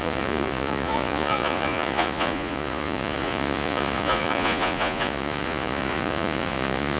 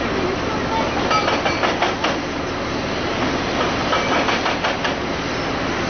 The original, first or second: second